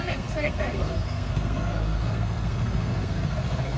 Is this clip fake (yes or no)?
yes